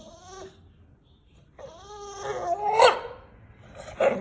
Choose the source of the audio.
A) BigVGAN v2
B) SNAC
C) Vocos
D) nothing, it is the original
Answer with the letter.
D